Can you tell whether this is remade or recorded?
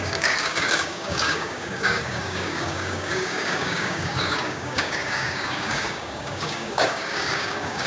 remade